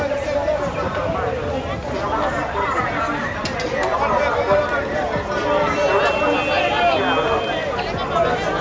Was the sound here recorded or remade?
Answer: recorded